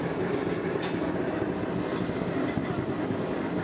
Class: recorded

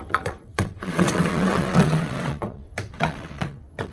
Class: remade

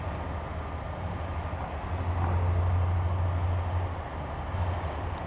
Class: recorded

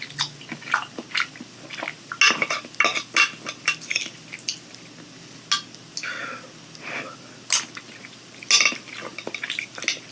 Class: recorded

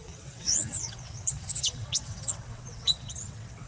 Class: remade